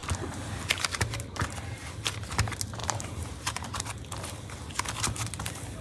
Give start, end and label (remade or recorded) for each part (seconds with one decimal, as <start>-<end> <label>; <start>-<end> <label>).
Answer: 0.0-2.8 recorded; 2.8-3.8 remade; 3.8-5.8 recorded